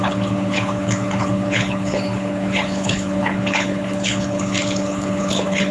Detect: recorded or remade remade